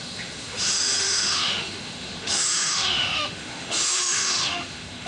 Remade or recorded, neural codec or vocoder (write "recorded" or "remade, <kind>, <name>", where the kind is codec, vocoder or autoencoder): remade, autoencoder, DAC-VAE